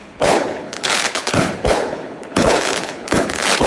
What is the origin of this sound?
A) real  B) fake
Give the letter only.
B